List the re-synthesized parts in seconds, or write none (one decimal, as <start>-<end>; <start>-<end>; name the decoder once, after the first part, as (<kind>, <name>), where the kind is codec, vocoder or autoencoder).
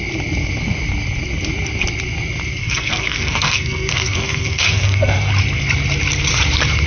2.6-5.3 (codec, SNAC)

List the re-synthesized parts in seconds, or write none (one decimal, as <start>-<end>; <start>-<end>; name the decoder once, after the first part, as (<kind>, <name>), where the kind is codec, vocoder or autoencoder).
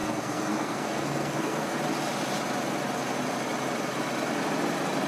0.0-1.8 (codec, SNAC)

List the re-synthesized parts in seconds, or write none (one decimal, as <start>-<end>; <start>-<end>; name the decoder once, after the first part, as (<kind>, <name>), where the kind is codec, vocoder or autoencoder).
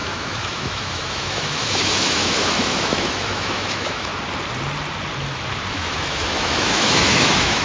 0.0-4.1 (autoencoder, DAC-VAE); 5.7-7.6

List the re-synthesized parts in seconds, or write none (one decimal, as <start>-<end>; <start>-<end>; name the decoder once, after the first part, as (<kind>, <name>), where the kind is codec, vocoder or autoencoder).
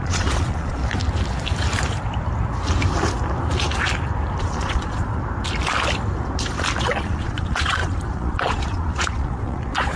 0.0-0.8 (vocoder, Vocos); 4.4-5.2; 6.8-10.0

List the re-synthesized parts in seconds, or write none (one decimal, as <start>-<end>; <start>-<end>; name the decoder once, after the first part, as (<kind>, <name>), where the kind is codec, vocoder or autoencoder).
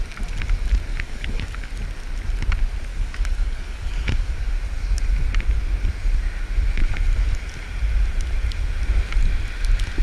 0.9-1.7 (codec, DAC); 2.9-4.5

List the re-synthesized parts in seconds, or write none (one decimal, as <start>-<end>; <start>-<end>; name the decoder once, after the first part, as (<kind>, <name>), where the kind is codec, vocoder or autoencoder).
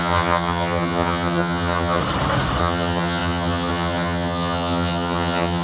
0.0-2.0 (vocoder, HiFi-GAN); 2.6-5.6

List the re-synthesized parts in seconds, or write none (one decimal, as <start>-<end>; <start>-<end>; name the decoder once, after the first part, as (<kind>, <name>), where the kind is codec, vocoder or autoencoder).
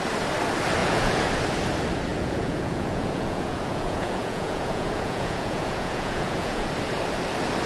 0.8-1.3 (vocoder, Vocos); 2.1-6.7